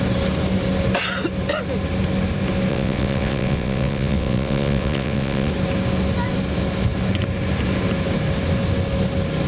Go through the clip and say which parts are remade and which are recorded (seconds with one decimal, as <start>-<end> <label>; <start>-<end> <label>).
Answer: 0.0-2.7 recorded; 2.7-5.5 remade; 5.5-9.5 recorded